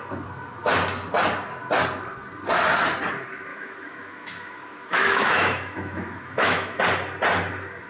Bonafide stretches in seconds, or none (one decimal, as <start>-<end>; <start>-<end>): 0.0-3.5; 6.8-7.9

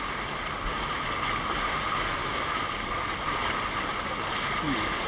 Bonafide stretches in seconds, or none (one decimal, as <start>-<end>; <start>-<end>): 0.0-2.2; 2.7-5.1

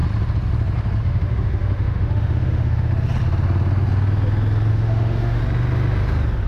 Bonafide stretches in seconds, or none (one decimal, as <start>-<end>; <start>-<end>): 0.0-1.0; 2.9-4.7; 5.4-6.5

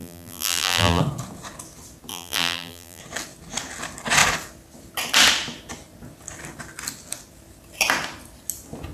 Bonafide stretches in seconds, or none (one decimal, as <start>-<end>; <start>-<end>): 1.0-2.1; 3.0-8.9

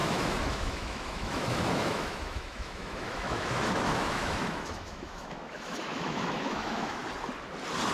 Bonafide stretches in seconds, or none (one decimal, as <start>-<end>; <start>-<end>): 7.0-7.9

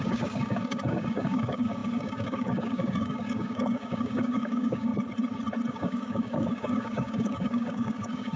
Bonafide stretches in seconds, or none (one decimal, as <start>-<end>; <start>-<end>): 4.9-5.7

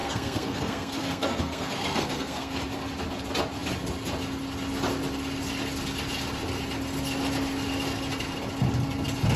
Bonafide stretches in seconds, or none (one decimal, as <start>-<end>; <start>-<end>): 2.6-9.4

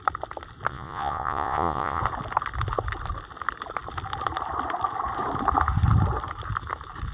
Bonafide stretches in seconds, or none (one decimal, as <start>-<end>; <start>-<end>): 0.0-0.7; 2.0-7.1